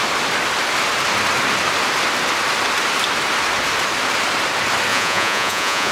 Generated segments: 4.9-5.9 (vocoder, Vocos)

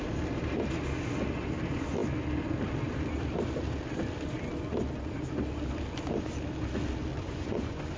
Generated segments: 7.1-8.0 (vocoder, Vocos)